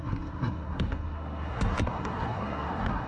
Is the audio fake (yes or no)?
yes